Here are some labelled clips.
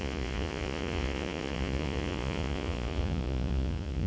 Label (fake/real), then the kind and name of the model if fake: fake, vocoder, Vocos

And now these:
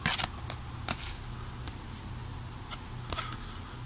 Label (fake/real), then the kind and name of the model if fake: real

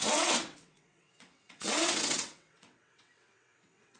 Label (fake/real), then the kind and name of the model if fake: fake, vocoder, WaveNeXt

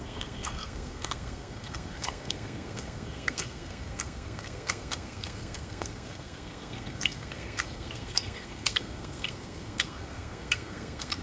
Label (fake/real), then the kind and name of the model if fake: fake, codec, SNAC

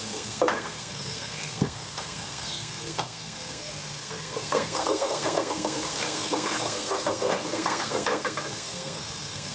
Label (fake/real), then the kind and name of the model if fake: fake, codec, SNAC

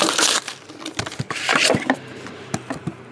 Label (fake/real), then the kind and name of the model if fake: fake, vocoder, BigVGAN v2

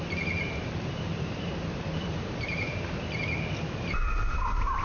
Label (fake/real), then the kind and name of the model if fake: real